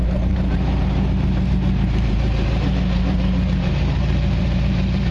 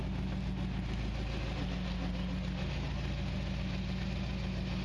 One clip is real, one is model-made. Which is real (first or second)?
second